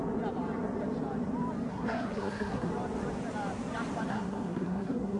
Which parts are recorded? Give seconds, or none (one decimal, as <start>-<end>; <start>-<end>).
0.0-1.7; 2.7-4.1